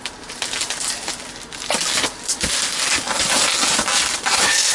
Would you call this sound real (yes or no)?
yes